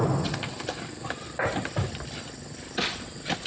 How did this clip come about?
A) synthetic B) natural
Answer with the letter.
B